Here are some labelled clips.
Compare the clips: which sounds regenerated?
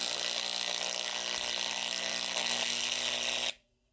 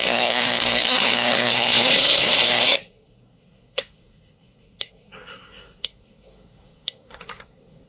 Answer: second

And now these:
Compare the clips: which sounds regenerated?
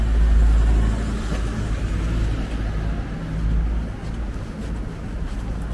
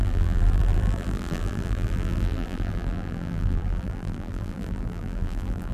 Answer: second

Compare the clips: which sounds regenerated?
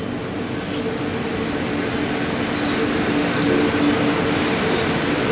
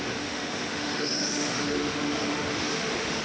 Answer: second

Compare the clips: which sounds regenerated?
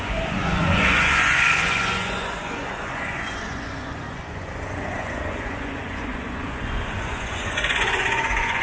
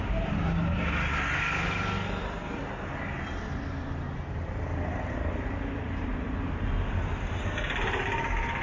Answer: first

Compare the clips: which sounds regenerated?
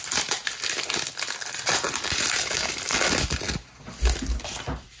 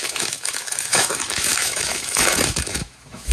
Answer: second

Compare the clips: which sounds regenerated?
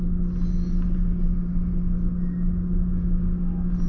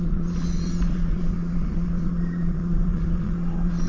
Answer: second